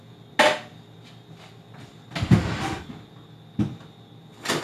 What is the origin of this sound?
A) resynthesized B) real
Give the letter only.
B